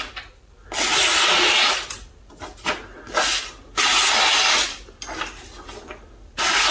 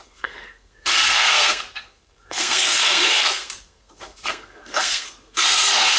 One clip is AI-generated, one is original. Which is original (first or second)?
first